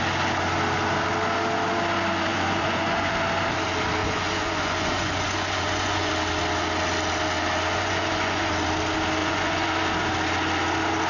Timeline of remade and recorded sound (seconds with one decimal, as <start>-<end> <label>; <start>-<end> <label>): 0.0-2.3 recorded; 2.3-3.1 remade; 3.1-4.0 recorded; 4.0-6.1 remade; 6.1-7.7 recorded; 7.7-8.5 remade; 8.5-9.2 recorded; 9.2-9.7 remade; 9.7-11.1 recorded